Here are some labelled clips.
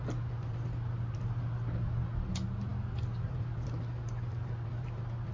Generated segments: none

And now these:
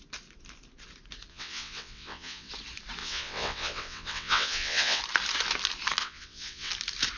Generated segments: 1.3-2.5 (vocoder, WaveNeXt); 3.0-5.0; 6.0-6.7

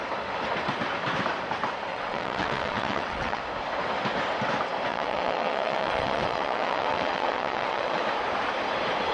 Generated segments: 1.9-3.4 (vocoder, WaveNeXt); 4.9-8.0

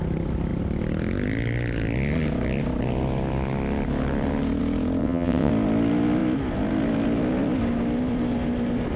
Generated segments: 5.0-5.5 (vocoder, WaveNeXt)

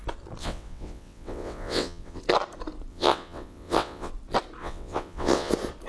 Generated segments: 0.4-2.2 (vocoder, WaveNeXt); 2.9-4.1; 4.6-5.5

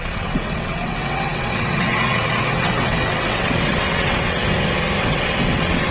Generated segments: 0.0-4.4 (vocoder, WaveNeXt); 5.0-5.9

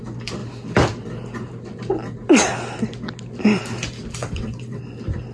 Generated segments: 4.2-4.8 (vocoder, WaveNeXt)

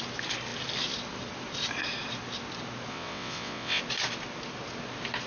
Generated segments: 2.9-3.8 (vocoder, WaveNeXt)